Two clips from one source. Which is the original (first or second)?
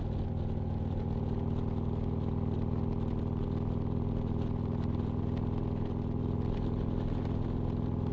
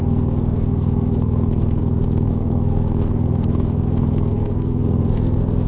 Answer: first